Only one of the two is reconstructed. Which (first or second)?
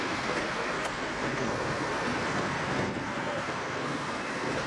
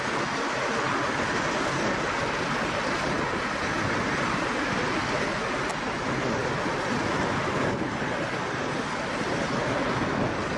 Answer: first